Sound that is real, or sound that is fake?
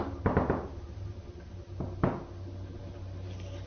real